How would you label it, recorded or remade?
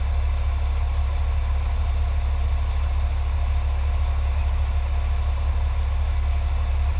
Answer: recorded